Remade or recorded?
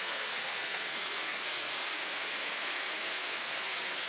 remade